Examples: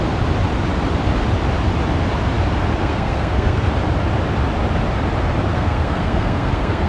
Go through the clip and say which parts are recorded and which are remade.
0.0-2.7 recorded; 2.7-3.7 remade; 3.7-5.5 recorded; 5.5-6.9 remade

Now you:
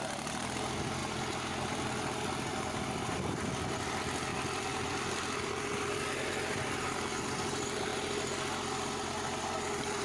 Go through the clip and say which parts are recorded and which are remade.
0.0-4.3 recorded; 4.3-6.0 remade; 6.0-10.0 recorded

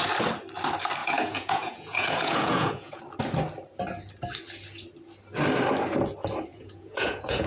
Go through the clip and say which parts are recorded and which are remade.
0.0-1.0 recorded; 1.0-3.0 remade; 3.0-6.5 recorded; 6.5-7.5 remade

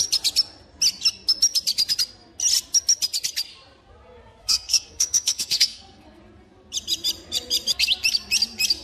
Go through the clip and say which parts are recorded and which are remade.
0.0-4.4 recorded; 4.4-6.2 remade; 6.2-8.8 recorded

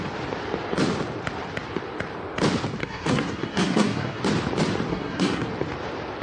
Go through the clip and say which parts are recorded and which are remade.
0.0-2.8 recorded; 2.8-4.2 remade; 4.2-4.9 recorded; 4.9-5.5 remade; 5.5-6.2 recorded